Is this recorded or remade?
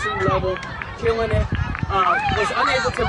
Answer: remade